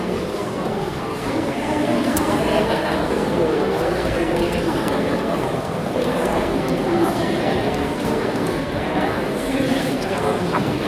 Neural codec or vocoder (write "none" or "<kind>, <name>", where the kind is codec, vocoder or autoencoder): codec, SNAC